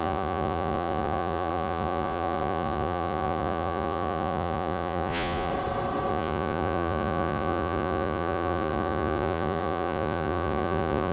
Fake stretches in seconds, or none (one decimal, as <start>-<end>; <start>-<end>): 0.0-5.5; 6.1-11.1